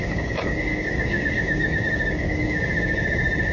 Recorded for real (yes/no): no